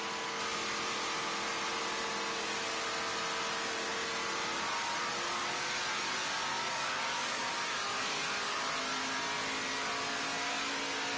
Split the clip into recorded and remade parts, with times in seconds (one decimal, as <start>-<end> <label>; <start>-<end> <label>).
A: 0.0-6.5 recorded; 6.5-8.6 remade; 8.6-11.2 recorded